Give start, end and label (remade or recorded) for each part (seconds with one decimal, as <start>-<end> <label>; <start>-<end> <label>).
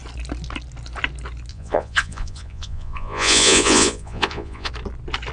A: 0.0-1.5 recorded; 1.5-4.7 remade; 4.7-5.3 recorded